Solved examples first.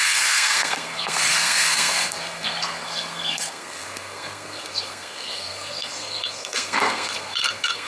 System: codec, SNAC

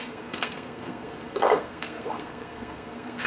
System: codec, SNAC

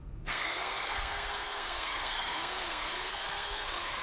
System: codec, SNAC